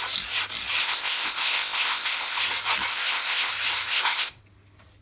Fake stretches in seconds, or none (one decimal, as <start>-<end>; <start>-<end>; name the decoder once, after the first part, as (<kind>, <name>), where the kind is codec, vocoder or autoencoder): 0.8-2.4 (codec, ZipCodec); 2.9-3.5; 3.9-4.4